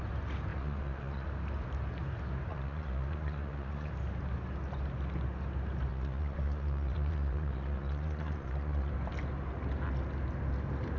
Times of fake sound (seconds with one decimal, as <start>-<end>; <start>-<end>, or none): 0.5-1.3; 2.5-3.9; 5.9-8.9